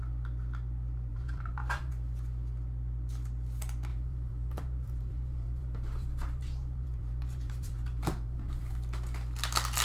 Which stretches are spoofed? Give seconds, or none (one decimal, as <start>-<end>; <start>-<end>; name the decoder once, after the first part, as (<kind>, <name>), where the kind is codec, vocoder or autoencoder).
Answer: 1.1-1.9 (vocoder, BigVGAN v2); 3.9-8.7